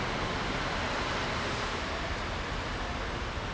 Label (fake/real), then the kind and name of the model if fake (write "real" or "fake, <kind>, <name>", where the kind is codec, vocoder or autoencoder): real